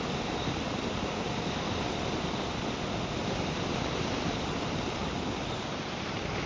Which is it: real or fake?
real